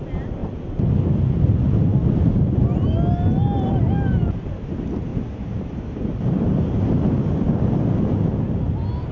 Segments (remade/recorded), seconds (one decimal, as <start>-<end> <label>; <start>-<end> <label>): 0.0-5.1 recorded; 5.1-6.9 remade; 6.9-9.1 recorded